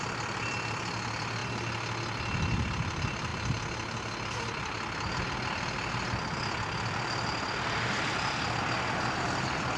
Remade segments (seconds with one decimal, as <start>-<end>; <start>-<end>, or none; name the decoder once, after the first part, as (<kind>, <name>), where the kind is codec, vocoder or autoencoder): none